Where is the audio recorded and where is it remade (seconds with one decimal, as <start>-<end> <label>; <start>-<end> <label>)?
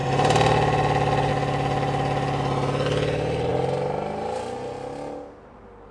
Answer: 0.0-5.9 recorded